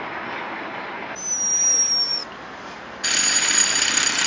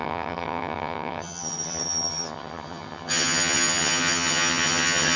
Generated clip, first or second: second